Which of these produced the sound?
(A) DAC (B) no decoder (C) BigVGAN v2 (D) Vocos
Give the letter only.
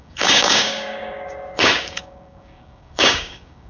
A